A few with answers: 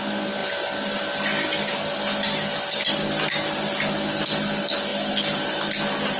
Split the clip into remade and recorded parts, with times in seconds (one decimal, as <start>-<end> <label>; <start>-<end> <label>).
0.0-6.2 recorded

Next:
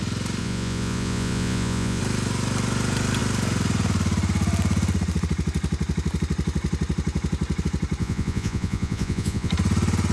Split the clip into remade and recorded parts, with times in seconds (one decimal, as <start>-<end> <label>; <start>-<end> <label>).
0.0-0.4 recorded; 0.4-2.0 remade; 2.0-8.0 recorded; 8.0-9.5 remade; 9.5-10.1 recorded

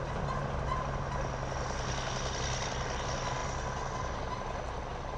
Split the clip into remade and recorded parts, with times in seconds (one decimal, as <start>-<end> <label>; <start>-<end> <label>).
0.0-5.2 recorded